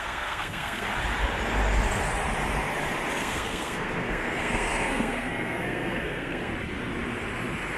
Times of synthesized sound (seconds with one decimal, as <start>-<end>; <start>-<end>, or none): 0.0-0.9; 3.2-6.5